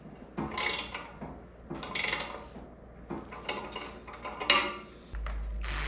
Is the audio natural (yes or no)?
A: yes